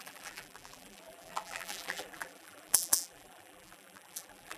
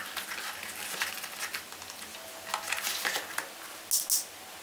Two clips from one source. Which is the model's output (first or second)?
first